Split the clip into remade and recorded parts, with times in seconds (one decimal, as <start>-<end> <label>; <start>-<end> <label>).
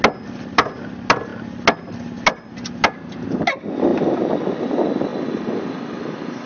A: 0.0-6.5 recorded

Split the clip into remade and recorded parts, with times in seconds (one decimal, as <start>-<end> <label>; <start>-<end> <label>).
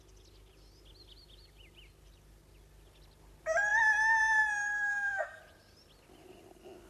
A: 0.0-4.9 recorded; 4.9-5.4 remade; 5.4-6.9 recorded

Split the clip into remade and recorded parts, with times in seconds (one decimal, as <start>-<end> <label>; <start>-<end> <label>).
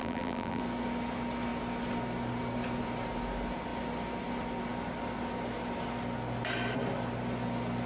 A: 0.0-0.6 remade; 0.6-7.9 recorded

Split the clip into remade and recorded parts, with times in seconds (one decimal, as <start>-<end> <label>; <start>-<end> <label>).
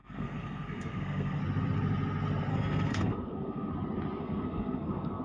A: 0.0-1.4 remade; 1.4-2.5 recorded; 2.5-3.7 remade; 3.7-4.2 recorded; 4.2-5.2 remade